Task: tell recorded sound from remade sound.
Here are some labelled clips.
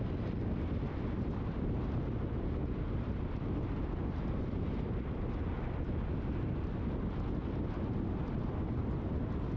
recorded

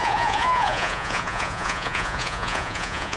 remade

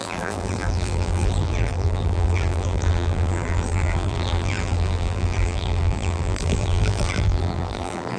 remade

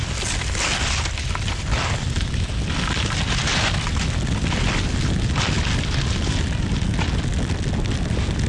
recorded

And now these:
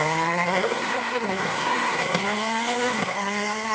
remade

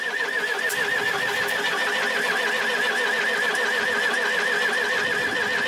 recorded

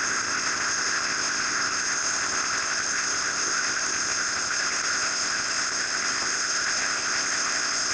remade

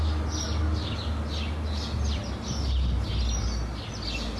recorded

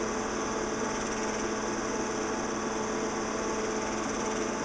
recorded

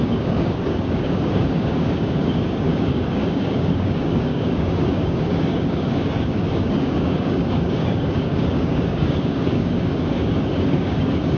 remade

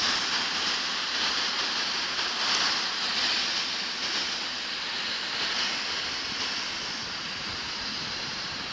recorded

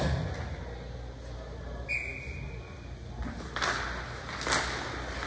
recorded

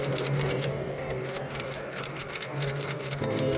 remade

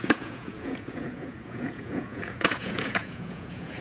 remade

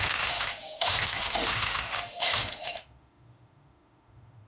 remade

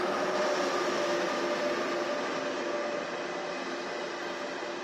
recorded